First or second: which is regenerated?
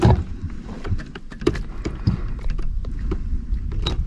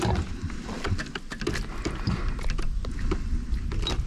first